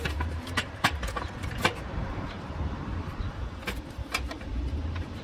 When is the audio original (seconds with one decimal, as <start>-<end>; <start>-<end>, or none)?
none